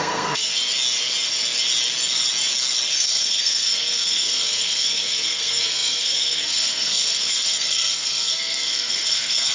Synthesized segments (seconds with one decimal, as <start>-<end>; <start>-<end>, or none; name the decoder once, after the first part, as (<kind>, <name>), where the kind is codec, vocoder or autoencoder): 0.0-0.5 (codec, SNAC); 2.9-9.5